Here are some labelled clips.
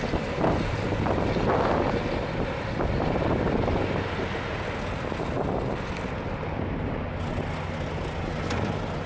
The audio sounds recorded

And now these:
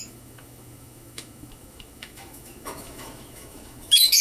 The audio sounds remade